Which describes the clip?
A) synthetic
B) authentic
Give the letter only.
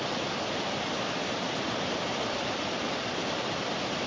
B